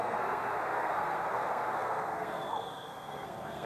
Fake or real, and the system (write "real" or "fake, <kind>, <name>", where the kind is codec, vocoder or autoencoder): fake, codec, SNAC